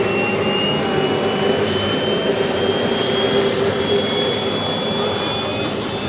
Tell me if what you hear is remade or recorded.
recorded